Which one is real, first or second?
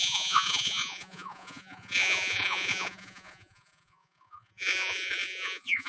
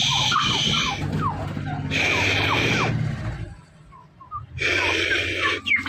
second